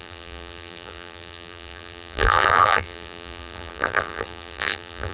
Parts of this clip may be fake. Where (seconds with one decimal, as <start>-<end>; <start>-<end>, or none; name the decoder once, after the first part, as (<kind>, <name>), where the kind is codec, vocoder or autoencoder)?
0.0-5.1 (vocoder, BigVGAN v2)